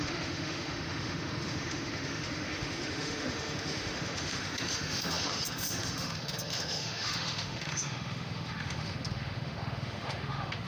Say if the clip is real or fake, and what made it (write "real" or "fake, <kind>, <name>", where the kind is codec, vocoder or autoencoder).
fake, autoencoder, DAC-VAE